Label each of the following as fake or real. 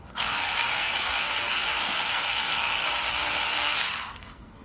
fake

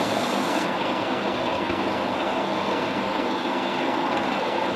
fake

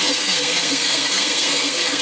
fake